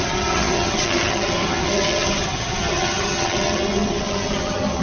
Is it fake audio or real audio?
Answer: fake